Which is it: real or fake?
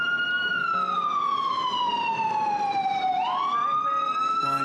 real